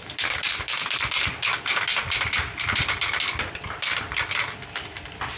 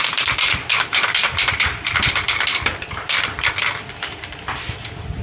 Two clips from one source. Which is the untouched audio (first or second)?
first